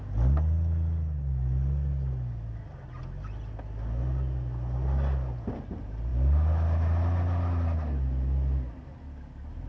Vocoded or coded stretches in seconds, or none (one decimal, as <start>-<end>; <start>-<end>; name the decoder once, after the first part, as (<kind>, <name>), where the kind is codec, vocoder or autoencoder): none